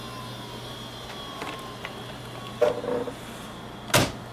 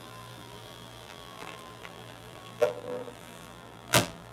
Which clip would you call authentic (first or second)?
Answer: first